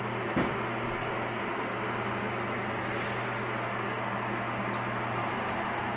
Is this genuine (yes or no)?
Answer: yes